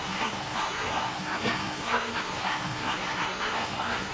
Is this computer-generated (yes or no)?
yes